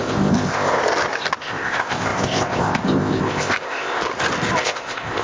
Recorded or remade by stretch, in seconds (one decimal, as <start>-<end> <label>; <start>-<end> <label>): 0.0-0.8 remade; 0.8-1.4 recorded; 1.4-4.1 remade; 4.1-4.6 recorded; 4.6-5.2 remade